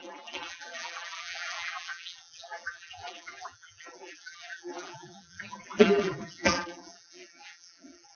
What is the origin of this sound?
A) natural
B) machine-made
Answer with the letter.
B